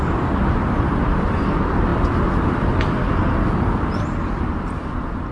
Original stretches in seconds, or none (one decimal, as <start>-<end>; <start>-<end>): 0.0-5.3